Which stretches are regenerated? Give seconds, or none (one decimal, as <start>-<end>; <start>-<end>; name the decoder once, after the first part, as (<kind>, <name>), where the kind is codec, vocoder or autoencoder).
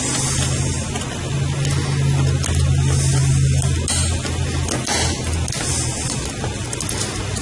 none